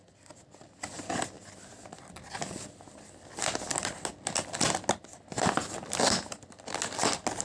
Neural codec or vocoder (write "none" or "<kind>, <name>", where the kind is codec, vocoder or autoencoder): none